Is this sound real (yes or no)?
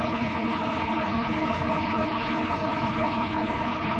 no